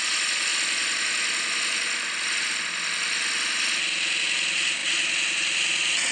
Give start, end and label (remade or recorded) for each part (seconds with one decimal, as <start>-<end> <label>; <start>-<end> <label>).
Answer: 0.0-6.1 recorded